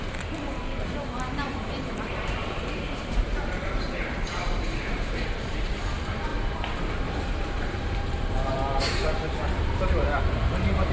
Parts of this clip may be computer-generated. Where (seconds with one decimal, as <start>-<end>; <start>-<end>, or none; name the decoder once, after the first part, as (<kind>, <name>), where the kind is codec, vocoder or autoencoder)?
0.0-10.9 (vocoder, BigVGAN v2)